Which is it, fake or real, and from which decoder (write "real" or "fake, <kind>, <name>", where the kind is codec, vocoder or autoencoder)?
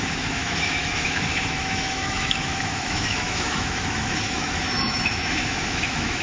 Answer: fake, autoencoder, DAC-VAE